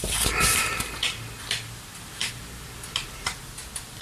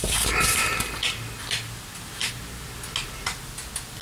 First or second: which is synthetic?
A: first